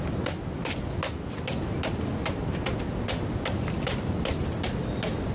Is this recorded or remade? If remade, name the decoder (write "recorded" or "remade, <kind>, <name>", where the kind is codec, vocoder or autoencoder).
recorded